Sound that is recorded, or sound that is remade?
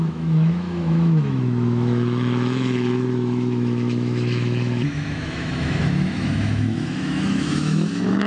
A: remade